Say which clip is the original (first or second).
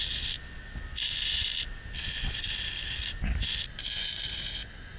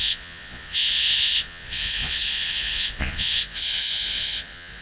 first